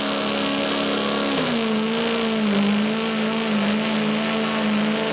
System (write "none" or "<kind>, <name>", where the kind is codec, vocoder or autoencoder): none